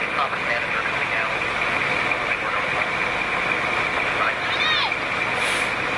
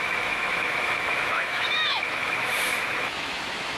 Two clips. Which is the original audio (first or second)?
first